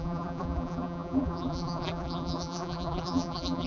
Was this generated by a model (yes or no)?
yes